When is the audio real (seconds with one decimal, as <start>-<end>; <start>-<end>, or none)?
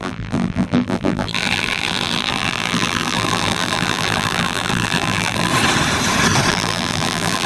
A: 5.5-6.5